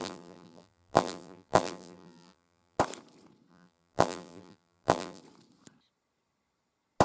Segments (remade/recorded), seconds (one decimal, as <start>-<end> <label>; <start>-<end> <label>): 0.0-2.8 remade; 2.8-3.5 recorded; 3.5-5.2 remade; 5.2-7.0 recorded